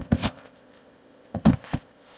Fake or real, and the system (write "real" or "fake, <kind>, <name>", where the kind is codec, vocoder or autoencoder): fake, codec, ZipCodec